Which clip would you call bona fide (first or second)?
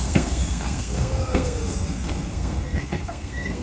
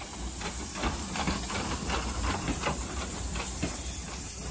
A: second